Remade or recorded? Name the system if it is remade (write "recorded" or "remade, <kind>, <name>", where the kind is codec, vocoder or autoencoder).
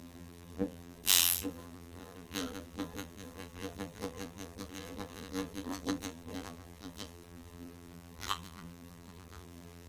remade, vocoder, BigVGAN v2